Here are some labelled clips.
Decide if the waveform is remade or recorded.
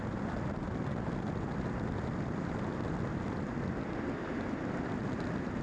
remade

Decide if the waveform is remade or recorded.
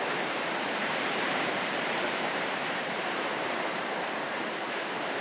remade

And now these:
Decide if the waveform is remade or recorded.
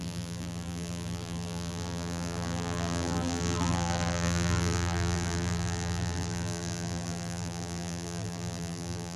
remade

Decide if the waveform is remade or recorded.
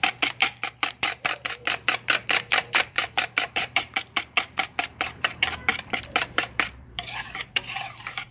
remade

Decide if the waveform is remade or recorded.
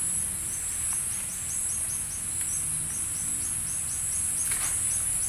recorded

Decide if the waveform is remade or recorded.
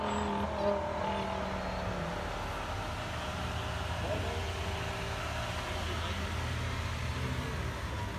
recorded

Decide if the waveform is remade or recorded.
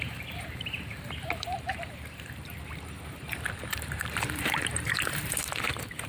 remade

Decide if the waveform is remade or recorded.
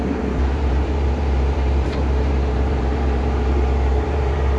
remade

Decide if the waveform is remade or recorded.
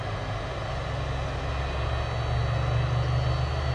recorded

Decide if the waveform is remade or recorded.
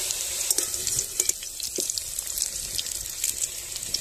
recorded